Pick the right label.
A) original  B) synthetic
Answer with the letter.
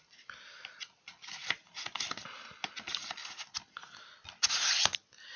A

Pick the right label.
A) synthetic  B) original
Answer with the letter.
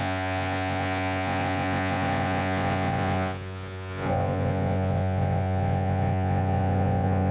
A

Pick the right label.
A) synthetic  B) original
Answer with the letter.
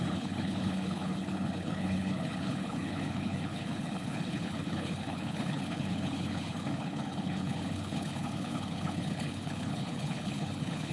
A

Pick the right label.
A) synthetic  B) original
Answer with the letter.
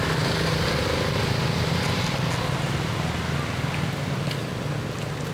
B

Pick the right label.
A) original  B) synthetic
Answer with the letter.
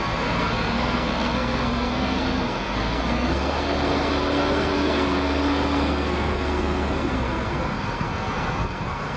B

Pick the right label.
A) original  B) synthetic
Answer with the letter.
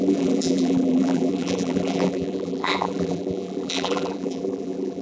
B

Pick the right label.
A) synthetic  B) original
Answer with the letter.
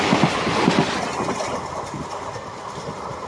B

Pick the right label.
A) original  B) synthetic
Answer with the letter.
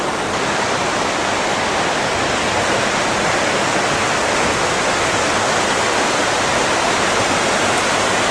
A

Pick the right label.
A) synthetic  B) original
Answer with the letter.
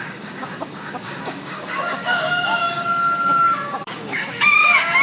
A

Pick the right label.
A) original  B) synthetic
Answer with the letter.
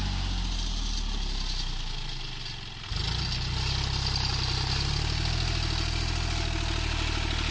A